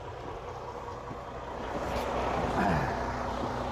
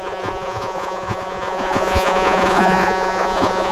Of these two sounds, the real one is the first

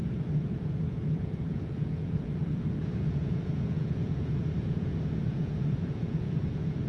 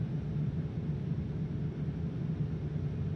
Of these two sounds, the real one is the second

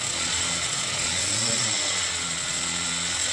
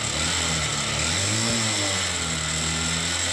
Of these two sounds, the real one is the second